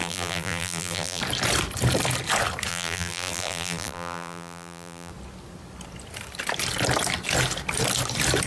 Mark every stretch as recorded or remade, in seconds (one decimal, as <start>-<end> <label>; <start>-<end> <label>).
0.0-1.2 remade; 1.2-2.7 recorded; 2.7-5.1 remade; 5.1-8.5 recorded